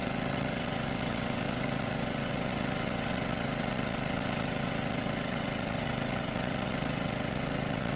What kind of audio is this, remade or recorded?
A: remade